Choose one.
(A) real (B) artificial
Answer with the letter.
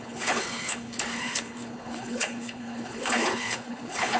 B